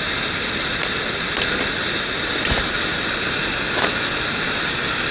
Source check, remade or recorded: recorded